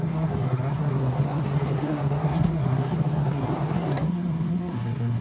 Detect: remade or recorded remade